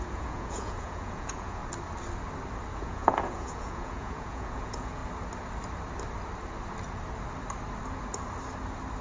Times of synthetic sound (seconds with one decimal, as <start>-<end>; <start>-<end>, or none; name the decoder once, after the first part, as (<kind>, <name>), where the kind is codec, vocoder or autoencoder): 0.0-1.6 (vocoder, Vocos); 2.7-5.0